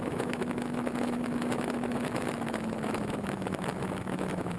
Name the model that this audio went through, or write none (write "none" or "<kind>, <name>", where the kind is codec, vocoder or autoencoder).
autoencoder, DAC-VAE